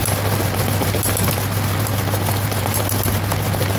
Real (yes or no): yes